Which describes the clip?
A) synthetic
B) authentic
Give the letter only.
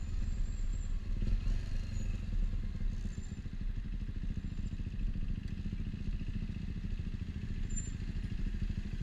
B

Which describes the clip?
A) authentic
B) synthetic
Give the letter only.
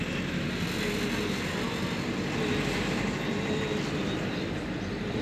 A